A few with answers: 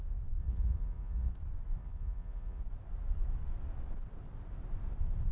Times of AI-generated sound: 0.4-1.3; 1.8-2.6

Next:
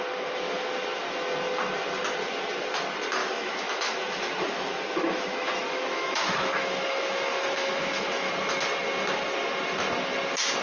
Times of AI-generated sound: 3.2-8.3

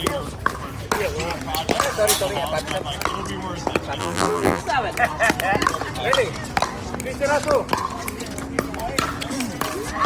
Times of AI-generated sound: 4.0-4.6

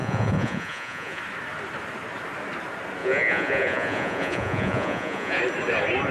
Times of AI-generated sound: 0.0-1.2; 3.0-5.4

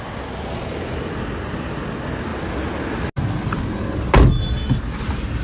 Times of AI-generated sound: none

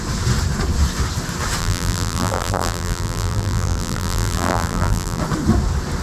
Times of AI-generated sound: 1.6-5.2

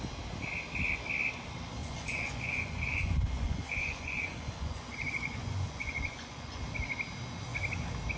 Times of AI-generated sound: 1.8-6.6

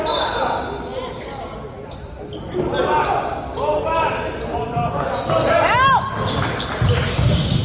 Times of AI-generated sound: none